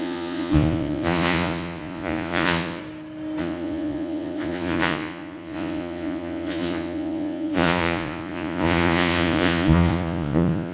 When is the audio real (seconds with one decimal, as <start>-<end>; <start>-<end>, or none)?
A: 2.8-3.4